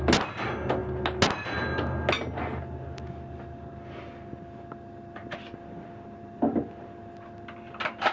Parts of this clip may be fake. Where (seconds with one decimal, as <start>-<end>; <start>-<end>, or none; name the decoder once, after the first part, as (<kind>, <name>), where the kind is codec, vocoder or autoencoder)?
none